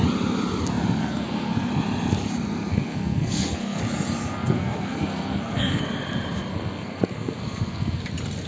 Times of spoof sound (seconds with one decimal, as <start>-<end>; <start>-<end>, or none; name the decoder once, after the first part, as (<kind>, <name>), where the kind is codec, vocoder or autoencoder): 1.0-1.7 (codec, SNAC); 2.7-3.8; 4.3-5.8; 6.5-8.0